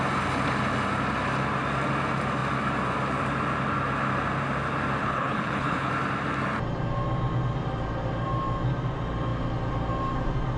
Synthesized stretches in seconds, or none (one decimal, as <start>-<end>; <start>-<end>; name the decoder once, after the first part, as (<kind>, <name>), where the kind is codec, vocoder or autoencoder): 5.0-5.9 (codec, HILCodec)